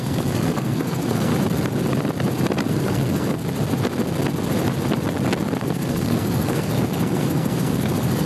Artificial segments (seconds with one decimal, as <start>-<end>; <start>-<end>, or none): 0.0-1.3; 2.7-3.4; 5.6-8.3